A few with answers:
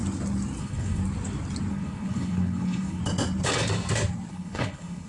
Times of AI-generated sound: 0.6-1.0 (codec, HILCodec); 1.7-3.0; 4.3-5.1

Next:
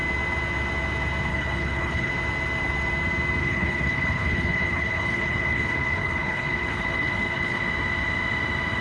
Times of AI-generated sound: 1.3-2.1 (codec, HILCodec); 3.4-7.6